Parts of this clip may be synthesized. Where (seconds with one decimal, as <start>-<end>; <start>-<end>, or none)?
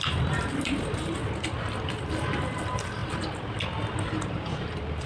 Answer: 0.0-1.2; 2.3-3.0; 3.9-5.1